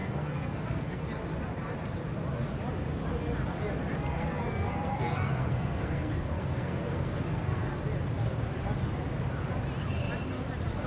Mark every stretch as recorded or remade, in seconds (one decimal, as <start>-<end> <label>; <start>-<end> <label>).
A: 0.0-1.0 remade; 1.0-4.1 recorded; 4.1-7.7 remade; 7.7-10.9 recorded